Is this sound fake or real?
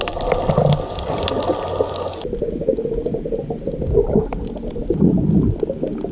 real